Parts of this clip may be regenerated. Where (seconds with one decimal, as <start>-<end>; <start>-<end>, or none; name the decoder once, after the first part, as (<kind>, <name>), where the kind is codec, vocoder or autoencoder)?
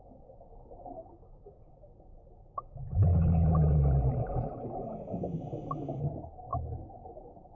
none